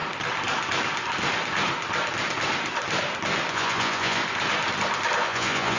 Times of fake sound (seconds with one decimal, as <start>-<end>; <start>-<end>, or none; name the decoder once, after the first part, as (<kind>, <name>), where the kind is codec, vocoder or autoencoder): 3.5-4.2 (vocoder, Vocos); 5.2-5.8